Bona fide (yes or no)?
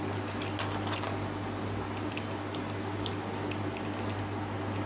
yes